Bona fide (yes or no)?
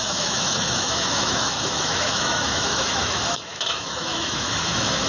no